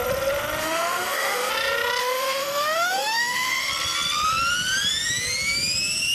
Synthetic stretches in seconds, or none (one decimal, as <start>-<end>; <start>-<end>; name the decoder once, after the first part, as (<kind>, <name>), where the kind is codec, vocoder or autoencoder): 0.6-1.5 (autoencoder, DAC-VAE); 2.0-3.7